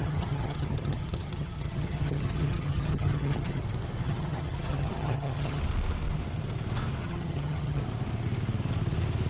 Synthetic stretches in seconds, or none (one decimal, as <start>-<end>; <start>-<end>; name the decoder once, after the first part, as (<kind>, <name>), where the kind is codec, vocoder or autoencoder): 0.0-3.6 (vocoder, HiFi-GAN); 4.0-5.6; 7.0-7.8